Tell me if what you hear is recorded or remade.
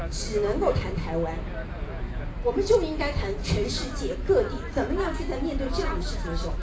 recorded